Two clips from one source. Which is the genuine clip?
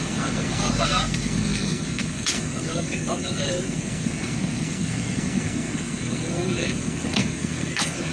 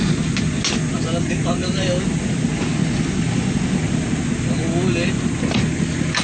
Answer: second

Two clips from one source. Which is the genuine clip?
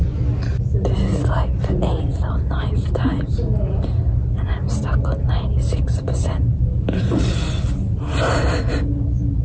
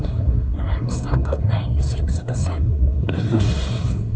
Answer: first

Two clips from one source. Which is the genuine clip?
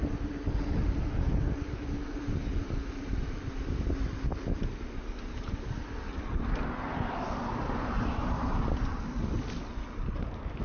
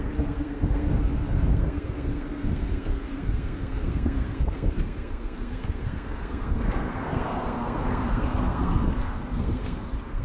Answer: first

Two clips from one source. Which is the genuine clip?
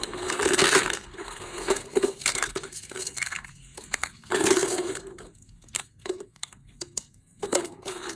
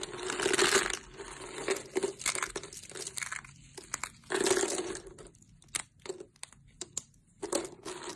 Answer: second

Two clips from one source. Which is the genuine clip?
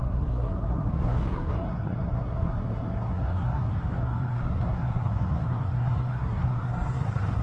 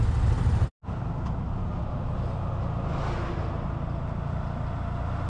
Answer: second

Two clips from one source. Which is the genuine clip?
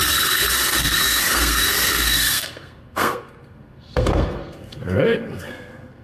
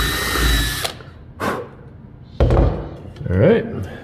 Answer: second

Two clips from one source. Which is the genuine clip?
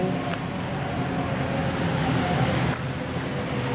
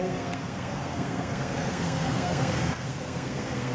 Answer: first